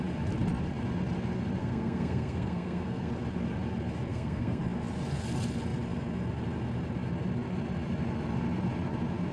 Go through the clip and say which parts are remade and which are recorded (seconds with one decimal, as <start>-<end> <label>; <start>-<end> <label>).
0.0-1.6 recorded; 1.6-3.1 remade; 3.1-4.1 recorded; 4.1-4.6 remade; 4.6-9.3 recorded